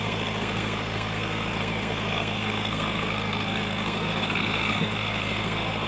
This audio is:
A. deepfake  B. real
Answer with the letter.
A